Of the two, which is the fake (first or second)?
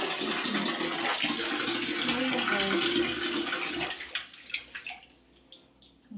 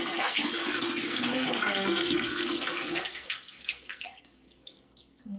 second